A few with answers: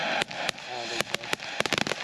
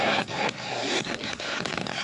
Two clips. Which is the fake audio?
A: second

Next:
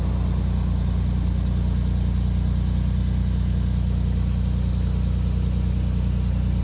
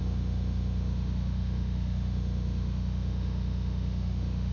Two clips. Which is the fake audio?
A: second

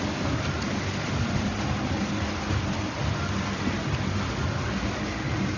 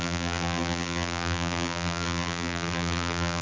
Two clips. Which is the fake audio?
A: second